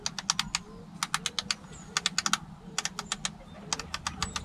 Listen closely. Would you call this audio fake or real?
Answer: real